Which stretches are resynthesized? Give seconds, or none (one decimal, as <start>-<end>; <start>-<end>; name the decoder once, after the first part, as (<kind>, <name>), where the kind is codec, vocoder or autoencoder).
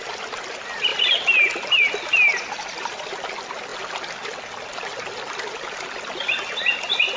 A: none